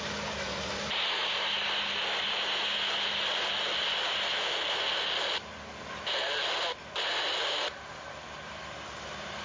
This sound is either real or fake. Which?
real